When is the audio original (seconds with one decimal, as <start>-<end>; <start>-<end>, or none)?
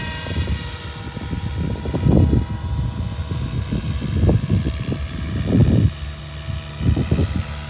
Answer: 0.0-7.7